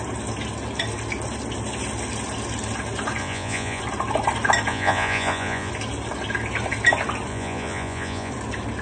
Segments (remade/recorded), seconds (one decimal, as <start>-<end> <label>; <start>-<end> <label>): 0.0-3.2 recorded; 3.2-3.8 remade; 3.8-4.7 recorded; 4.7-5.7 remade; 5.7-7.3 recorded; 7.3-8.3 remade; 8.3-8.8 recorded